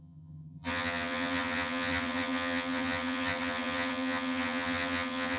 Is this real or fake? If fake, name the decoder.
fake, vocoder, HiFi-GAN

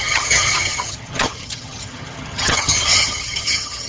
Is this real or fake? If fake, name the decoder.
fake, vocoder, HiFi-GAN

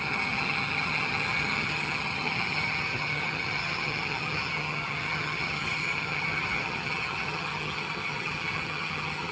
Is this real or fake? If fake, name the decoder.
fake, vocoder, HiFi-GAN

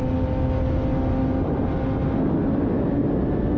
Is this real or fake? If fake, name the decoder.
real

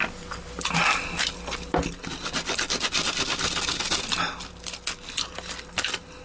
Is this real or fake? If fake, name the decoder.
real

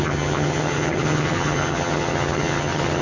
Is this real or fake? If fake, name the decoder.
fake, vocoder, HiFi-GAN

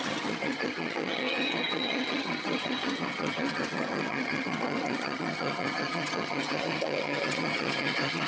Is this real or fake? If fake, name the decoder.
fake, vocoder, HiFi-GAN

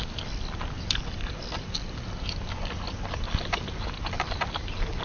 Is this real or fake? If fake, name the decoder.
real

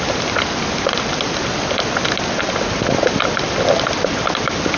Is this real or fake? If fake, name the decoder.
real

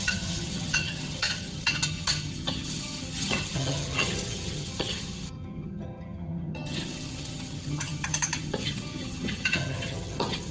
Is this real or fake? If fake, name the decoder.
fake, vocoder, HiFi-GAN